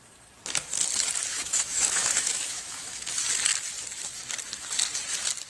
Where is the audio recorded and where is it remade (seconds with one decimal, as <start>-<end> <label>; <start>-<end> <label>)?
0.0-1.3 recorded; 1.3-3.1 remade; 3.1-5.5 recorded